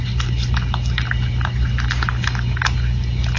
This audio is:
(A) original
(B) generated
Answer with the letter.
A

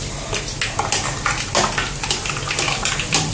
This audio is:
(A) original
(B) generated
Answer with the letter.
A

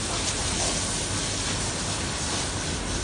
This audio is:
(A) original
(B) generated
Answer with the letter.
A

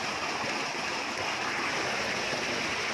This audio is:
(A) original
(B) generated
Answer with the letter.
A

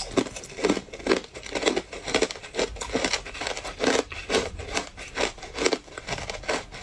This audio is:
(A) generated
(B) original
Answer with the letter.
B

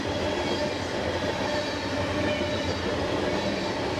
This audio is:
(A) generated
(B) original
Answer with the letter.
B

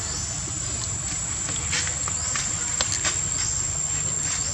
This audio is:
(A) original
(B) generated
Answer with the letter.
A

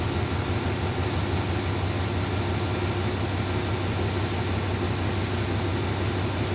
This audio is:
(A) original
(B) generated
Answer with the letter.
A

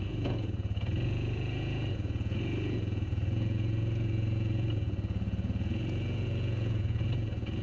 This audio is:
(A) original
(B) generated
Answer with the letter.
B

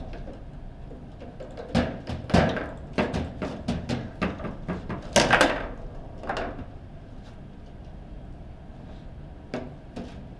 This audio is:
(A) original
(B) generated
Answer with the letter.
A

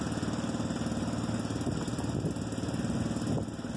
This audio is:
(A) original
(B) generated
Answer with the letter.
A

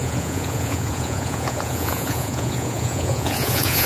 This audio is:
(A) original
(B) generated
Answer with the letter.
B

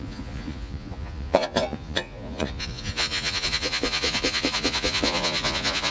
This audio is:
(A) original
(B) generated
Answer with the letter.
B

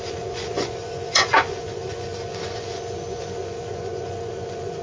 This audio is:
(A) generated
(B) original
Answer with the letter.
A